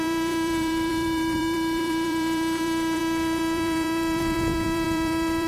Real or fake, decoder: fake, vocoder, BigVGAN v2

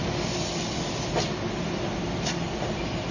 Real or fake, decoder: fake, vocoder, BigVGAN v2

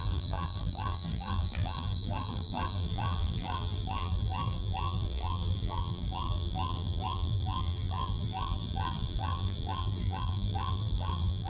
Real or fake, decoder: fake, vocoder, BigVGAN v2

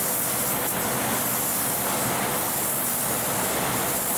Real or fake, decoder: real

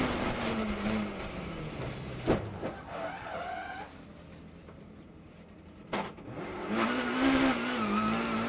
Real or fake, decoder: real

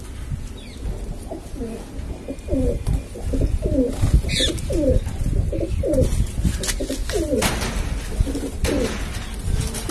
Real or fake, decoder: real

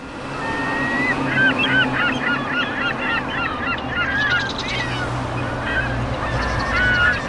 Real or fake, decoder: real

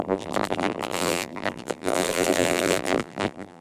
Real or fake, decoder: fake, vocoder, BigVGAN v2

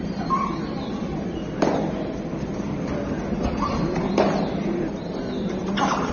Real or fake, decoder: real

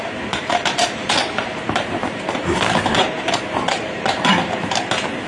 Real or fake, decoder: fake, vocoder, BigVGAN v2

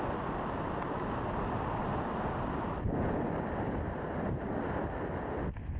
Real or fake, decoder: real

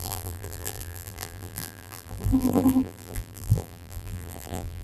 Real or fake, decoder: fake, vocoder, BigVGAN v2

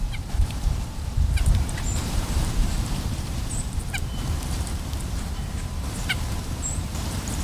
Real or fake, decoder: fake, vocoder, BigVGAN v2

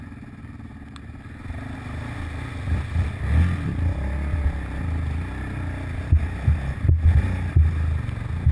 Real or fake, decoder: real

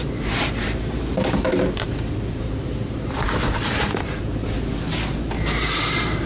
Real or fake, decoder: fake, vocoder, BigVGAN v2